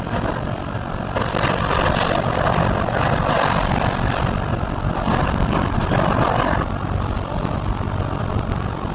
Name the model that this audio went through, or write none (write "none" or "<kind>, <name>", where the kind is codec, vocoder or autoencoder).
none